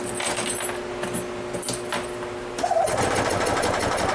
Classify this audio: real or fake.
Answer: real